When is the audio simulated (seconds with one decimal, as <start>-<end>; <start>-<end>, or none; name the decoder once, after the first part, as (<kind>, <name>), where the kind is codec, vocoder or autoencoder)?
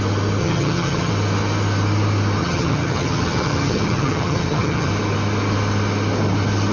0.4-1.1 (vocoder, HiFi-GAN); 2.4-4.9